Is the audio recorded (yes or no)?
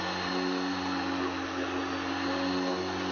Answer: yes